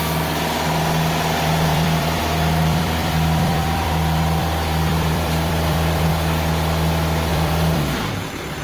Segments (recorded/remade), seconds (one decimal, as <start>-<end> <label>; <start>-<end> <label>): 0.0-1.7 recorded; 1.7-6.1 remade; 6.1-7.3 recorded; 7.3-8.6 remade

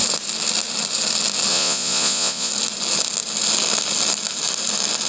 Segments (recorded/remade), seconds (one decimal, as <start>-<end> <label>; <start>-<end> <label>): 0.0-1.5 recorded; 1.5-2.5 remade; 2.5-5.1 recorded

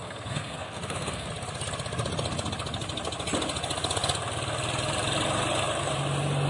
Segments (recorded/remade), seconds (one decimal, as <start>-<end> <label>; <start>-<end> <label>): 0.0-1.3 remade; 1.3-6.5 recorded

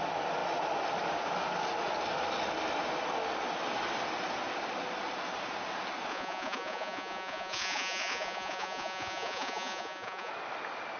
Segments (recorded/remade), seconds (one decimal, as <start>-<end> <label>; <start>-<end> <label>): 0.0-6.1 recorded; 6.1-10.3 remade; 10.3-11.0 recorded

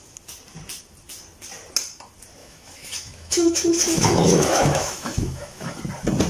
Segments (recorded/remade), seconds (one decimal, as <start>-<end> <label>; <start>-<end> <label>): 0.0-2.4 recorded; 2.4-5.8 remade; 5.8-6.3 recorded

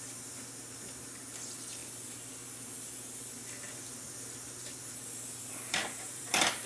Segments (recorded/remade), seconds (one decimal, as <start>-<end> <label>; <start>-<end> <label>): 0.0-5.8 recorded; 5.8-6.3 remade; 6.3-6.7 recorded